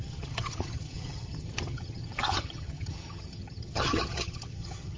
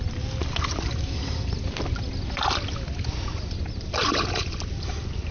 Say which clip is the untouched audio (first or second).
second